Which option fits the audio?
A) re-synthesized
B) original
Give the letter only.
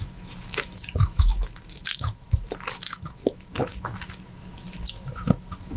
A